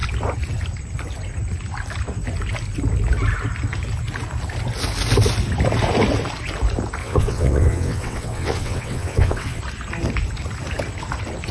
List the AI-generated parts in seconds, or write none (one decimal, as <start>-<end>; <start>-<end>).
7.0-9.6